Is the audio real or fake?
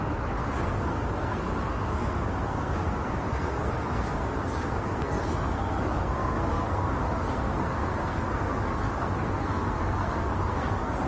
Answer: fake